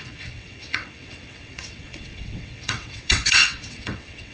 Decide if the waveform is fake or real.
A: fake